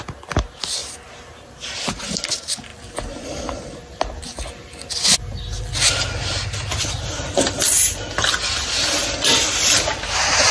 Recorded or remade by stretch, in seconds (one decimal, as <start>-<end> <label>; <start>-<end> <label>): 0.0-10.5 recorded